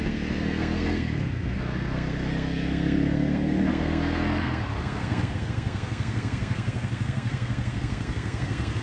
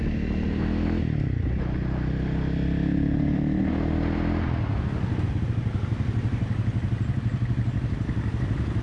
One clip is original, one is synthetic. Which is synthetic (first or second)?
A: first